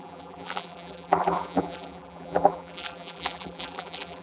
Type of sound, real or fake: fake